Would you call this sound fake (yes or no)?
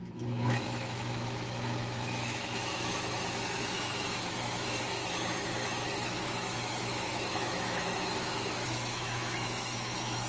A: yes